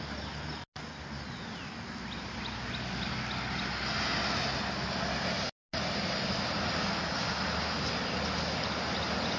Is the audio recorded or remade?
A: recorded